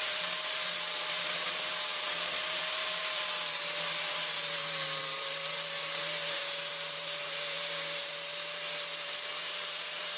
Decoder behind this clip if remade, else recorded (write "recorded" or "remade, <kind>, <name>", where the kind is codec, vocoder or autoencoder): remade, vocoder, BigVGAN v2